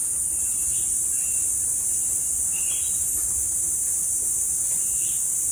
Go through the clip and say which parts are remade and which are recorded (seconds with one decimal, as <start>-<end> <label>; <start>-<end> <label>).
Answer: 0.0-5.5 recorded